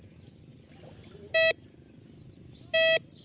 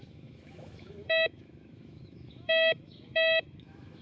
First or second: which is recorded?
first